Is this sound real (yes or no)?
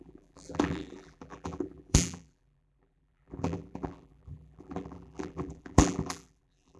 no